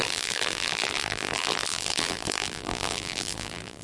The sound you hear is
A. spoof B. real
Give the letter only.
A